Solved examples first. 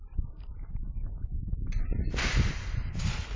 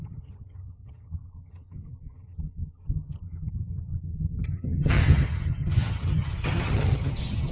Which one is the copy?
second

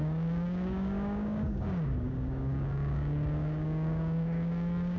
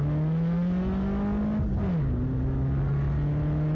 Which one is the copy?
first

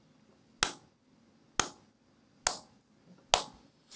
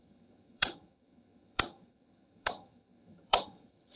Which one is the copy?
second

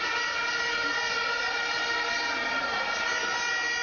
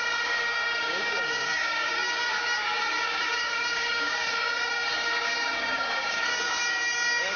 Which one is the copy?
second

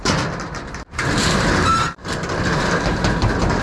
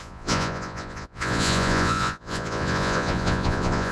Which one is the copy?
second